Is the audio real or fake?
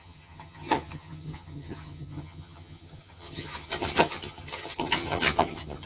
fake